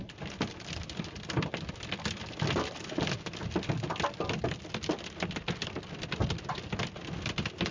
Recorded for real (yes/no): yes